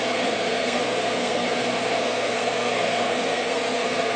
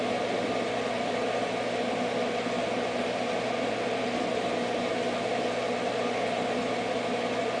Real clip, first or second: second